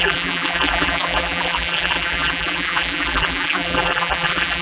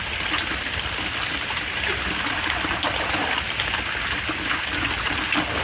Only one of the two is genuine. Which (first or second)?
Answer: second